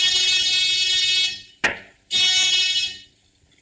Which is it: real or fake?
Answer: real